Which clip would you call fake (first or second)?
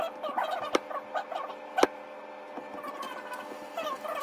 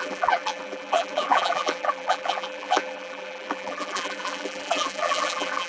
second